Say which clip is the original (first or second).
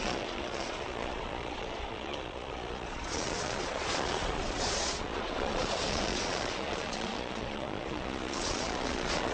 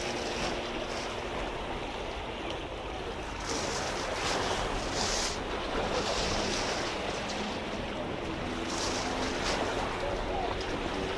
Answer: second